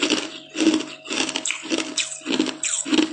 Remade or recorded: recorded